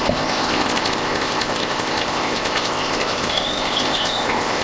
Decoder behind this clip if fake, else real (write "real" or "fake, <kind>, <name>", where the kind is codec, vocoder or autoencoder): fake, codec, ZipCodec